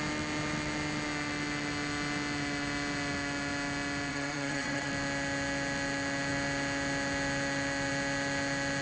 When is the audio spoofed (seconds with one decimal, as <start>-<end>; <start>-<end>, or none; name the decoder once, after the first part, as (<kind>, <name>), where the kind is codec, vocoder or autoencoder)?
4.1-4.9 (vocoder, HiFi-GAN)